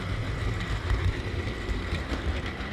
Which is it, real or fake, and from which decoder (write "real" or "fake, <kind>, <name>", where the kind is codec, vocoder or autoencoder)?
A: real